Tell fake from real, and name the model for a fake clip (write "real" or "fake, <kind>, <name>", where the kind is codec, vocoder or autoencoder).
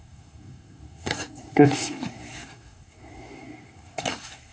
fake, codec, SNAC